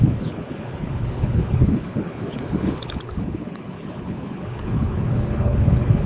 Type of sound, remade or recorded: remade